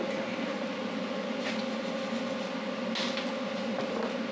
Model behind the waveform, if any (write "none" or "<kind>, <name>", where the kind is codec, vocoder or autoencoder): none